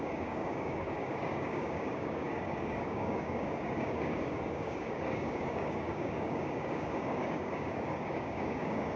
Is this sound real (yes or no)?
no